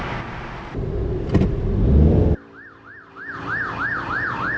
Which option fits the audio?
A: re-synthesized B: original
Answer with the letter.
B